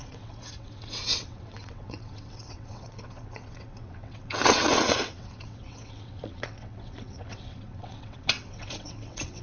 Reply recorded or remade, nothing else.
remade